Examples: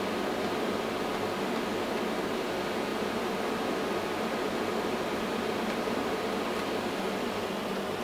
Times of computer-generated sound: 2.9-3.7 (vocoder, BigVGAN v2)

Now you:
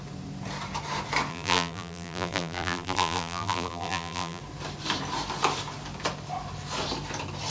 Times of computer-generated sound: 1.3-4.4 (vocoder, BigVGAN v2)

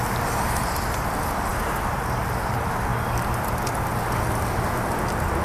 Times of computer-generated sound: none

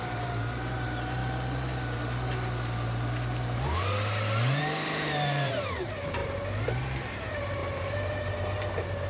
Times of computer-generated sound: 0.0-1.2 (vocoder, BigVGAN v2); 4.6-9.1

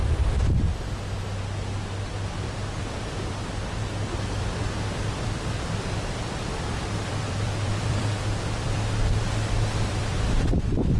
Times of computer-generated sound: 3.0-11.0 (vocoder, BigVGAN v2)

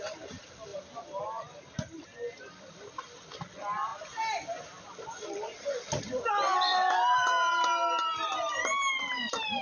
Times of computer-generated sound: 0.7-1.2 (vocoder, BigVGAN v2); 3.9-6.3; 6.7-8.4

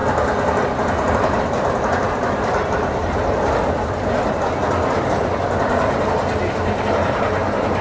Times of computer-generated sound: 1.1-3.5 (vocoder, BigVGAN v2)